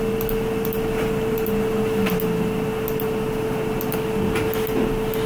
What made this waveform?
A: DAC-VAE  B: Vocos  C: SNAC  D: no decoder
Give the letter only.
D